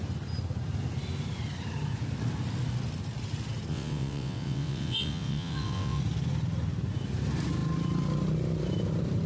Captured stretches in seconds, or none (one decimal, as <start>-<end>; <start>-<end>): 0.0-3.7; 6.0-9.3